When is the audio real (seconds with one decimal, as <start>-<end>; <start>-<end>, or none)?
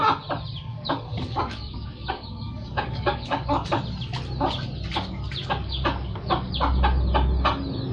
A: 0.0-0.7; 3.8-5.6; 6.5-7.9